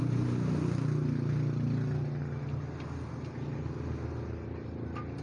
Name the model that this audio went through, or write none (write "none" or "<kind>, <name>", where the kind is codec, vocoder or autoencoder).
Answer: none